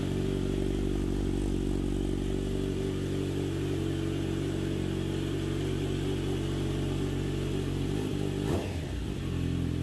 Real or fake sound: real